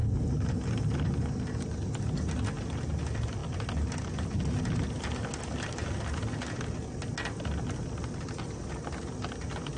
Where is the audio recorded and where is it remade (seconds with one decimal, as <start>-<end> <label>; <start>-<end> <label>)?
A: 0.0-9.8 recorded